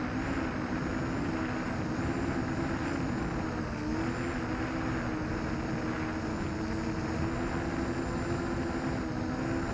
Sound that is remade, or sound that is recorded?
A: recorded